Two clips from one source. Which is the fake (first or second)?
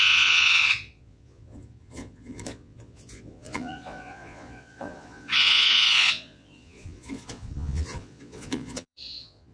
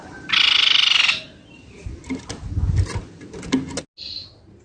first